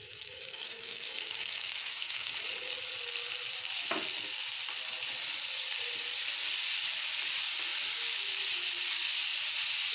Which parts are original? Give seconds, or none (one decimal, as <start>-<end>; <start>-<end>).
2.4-9.9